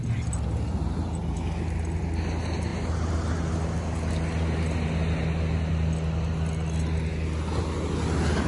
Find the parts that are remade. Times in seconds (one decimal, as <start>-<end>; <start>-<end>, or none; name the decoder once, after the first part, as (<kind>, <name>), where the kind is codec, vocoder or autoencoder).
none